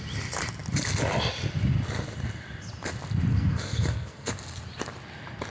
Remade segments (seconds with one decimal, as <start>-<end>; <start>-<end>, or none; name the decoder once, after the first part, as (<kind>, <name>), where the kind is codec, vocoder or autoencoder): 3.3-4.3 (codec, SNAC)